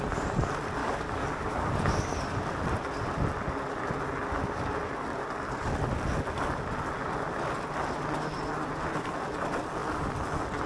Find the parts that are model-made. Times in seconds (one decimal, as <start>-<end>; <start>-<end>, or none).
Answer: 0.8-1.7